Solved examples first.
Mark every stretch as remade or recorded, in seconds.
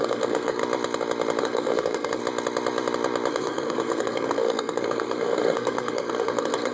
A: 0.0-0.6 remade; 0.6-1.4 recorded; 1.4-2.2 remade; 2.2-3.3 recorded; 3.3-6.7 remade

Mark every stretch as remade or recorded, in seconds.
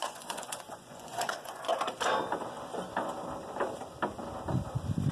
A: 0.0-1.7 remade; 1.7-5.1 recorded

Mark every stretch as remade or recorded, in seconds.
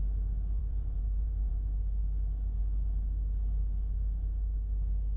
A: 0.0-0.6 recorded; 0.6-1.5 remade; 1.5-5.2 recorded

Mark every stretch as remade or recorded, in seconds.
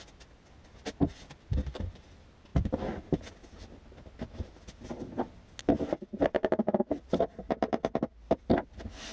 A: 0.0-9.1 recorded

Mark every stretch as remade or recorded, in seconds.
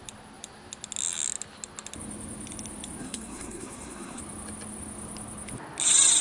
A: 0.0-3.0 recorded; 3.0-4.2 remade; 4.2-6.2 recorded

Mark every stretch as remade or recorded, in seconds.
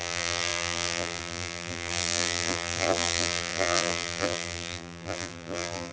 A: 0.0-5.9 remade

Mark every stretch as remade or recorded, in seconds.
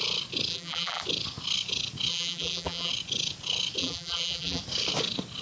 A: 0.0-0.5 recorded; 0.5-1.0 remade; 1.0-2.1 recorded; 2.1-2.9 remade; 2.9-3.8 recorded; 3.8-4.6 remade; 4.6-5.4 recorded